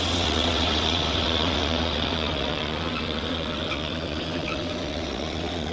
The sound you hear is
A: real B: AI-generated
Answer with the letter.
B